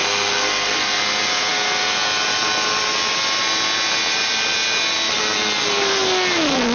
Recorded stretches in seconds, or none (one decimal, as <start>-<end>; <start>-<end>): 1.0-6.7